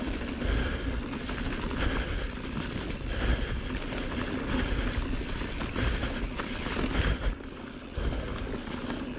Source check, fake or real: real